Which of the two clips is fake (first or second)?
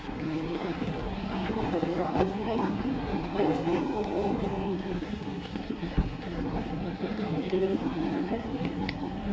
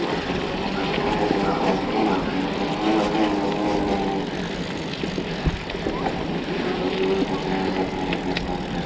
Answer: first